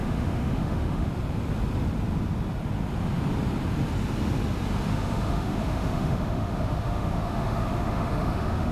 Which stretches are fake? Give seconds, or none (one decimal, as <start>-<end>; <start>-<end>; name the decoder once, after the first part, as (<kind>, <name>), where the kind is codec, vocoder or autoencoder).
0.0-1.1 (autoencoder, DAC-VAE); 4.9-8.7